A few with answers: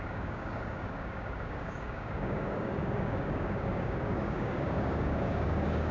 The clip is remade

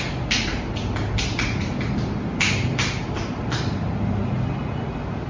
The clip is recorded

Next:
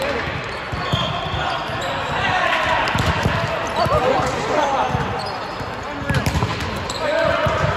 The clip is recorded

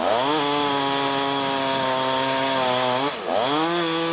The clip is recorded